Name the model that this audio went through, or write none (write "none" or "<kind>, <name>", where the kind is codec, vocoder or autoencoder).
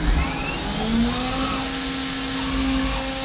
none